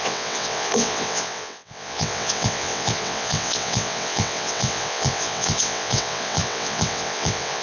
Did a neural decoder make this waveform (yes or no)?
yes